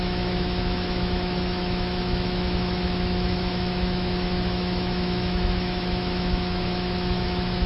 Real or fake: fake